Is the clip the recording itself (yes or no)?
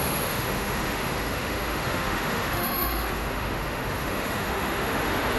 no